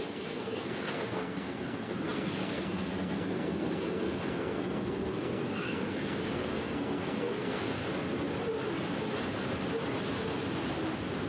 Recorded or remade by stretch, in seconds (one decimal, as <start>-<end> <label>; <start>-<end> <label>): 0.0-7.8 remade; 7.8-11.3 recorded